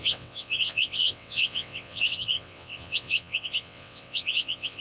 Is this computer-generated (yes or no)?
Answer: yes